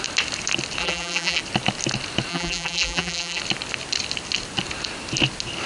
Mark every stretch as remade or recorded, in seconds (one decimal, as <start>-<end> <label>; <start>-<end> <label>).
0.0-0.8 recorded; 0.8-1.4 remade; 1.4-2.3 recorded; 2.3-3.4 remade; 3.4-5.7 recorded